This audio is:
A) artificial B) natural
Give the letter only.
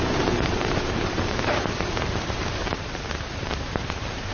A